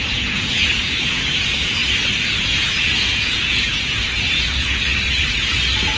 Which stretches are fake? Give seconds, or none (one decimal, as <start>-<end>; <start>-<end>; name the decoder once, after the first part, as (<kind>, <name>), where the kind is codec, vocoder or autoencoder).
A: 0.0-1.8 (vocoder, Vocos); 2.4-4.9